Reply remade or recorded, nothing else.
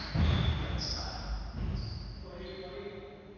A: recorded